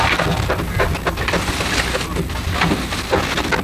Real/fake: real